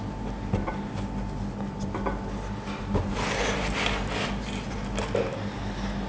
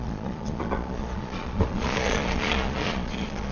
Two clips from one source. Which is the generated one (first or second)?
second